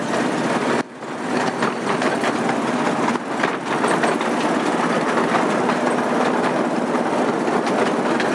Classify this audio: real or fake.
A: real